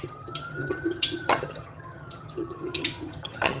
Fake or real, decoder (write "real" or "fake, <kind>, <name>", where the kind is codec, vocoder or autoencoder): fake, vocoder, HiFi-GAN